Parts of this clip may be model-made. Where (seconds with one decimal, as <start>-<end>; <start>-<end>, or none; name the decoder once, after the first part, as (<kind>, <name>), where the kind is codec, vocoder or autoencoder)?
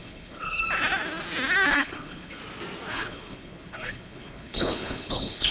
0.0-0.6 (codec, HILCodec); 1.7-2.4; 2.9-5.5